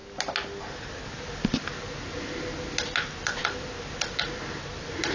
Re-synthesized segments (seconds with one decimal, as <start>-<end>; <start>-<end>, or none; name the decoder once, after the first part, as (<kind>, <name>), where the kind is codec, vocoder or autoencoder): none